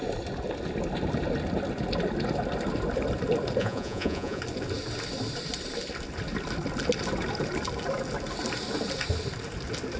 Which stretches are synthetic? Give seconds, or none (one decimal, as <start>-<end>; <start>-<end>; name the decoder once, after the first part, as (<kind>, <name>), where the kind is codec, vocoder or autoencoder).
3.6-4.4 (vocoder, Vocos)